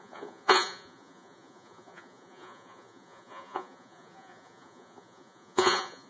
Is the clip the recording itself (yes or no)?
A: no